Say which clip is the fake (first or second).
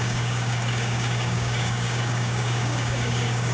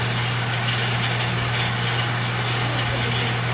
first